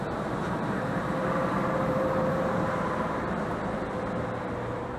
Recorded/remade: remade